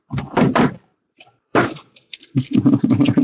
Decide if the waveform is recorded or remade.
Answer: remade